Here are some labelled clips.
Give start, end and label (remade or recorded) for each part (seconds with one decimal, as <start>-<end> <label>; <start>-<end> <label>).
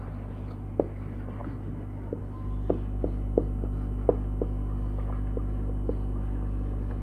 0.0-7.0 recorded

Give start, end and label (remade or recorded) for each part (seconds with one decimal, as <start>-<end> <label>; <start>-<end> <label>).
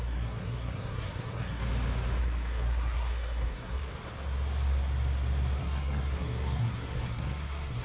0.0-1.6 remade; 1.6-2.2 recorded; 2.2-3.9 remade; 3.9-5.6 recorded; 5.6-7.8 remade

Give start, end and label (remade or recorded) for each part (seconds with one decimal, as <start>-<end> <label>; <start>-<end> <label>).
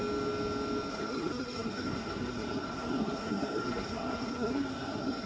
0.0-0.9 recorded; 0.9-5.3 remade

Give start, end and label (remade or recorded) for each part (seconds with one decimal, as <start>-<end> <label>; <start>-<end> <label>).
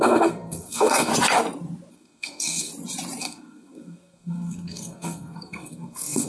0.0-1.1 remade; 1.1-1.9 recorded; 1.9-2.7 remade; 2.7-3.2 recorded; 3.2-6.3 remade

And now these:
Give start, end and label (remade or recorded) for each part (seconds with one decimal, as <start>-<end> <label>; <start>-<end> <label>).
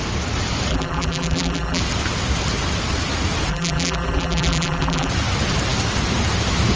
0.0-0.7 recorded; 0.7-1.8 remade; 1.8-3.5 recorded; 3.5-5.1 remade; 5.1-6.8 recorded